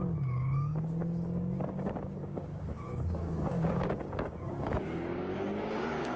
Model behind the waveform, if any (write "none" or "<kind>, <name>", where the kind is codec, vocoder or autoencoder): codec, DAC